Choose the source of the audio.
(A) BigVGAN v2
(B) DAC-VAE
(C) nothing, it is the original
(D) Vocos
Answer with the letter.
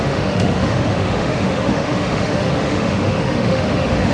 B